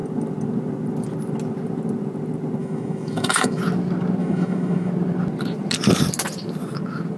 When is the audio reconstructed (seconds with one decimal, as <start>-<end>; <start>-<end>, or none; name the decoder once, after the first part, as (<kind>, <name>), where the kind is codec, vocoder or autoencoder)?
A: 2.6-3.6 (autoencoder, DAC-VAE); 4.2-4.9

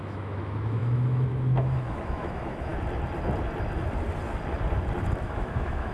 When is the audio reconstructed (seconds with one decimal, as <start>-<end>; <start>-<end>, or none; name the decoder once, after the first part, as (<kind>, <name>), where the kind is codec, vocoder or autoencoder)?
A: 0.0-2.7 (autoencoder, DAC-VAE); 5.2-5.9

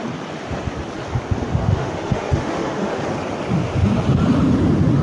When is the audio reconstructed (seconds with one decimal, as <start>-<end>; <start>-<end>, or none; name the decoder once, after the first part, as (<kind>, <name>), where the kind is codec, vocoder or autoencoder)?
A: 1.6-3.0 (autoencoder, DAC-VAE)

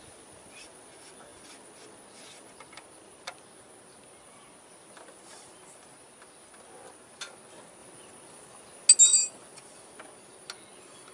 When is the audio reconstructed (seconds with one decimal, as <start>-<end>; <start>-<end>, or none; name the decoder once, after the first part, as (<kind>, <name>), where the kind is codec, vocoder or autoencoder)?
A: none

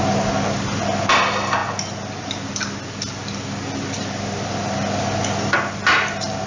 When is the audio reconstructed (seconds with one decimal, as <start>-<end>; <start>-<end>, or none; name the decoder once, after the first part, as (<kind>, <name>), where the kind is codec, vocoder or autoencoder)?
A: none

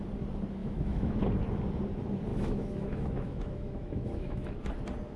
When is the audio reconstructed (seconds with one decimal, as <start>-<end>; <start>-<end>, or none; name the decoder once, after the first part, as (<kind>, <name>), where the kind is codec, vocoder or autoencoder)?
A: 0.6-1.2 (autoencoder, DAC-VAE); 2.3-4.5

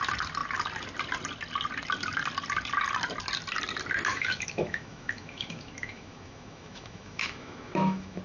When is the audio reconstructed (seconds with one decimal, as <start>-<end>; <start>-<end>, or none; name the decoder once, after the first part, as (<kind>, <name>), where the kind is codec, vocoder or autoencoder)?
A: 4.1-8.2 (autoencoder, DAC-VAE)